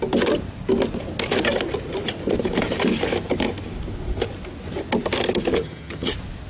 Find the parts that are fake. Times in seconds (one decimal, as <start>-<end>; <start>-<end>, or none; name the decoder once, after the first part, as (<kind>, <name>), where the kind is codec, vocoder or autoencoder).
5.6-6.1 (vocoder, HiFi-GAN)

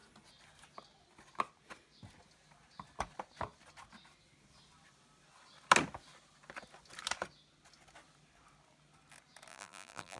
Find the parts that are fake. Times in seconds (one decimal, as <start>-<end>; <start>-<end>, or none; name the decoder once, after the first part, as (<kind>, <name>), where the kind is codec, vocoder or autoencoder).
9.5-10.2 (vocoder, BigVGAN v2)

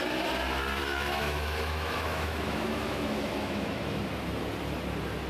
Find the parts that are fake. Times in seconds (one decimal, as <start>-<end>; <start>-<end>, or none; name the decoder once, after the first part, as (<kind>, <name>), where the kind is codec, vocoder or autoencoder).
0.8-4.0 (autoencoder, DAC-VAE)

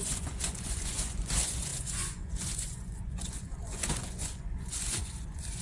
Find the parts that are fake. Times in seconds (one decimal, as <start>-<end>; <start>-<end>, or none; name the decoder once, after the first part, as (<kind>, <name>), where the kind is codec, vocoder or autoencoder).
0.0-5.6 (vocoder, Vocos)

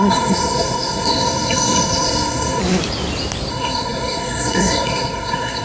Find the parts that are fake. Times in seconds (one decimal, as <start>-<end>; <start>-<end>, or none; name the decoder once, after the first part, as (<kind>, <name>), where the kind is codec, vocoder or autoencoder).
0.0-2.6 (codec, SNAC); 3.5-5.6

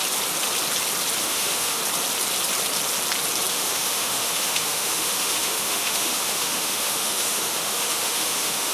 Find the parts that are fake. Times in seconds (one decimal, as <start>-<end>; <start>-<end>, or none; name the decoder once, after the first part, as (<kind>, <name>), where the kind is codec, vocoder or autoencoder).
1.2-1.8 (autoencoder, DAC-VAE); 3.5-8.7